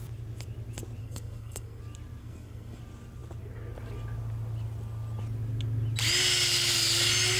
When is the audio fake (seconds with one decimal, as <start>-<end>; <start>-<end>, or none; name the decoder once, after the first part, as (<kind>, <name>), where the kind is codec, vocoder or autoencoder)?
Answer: 1.0-1.8 (codec, SNAC); 2.2-2.8